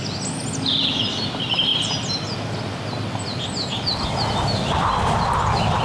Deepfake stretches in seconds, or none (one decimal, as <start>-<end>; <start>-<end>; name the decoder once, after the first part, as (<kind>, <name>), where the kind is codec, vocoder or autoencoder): none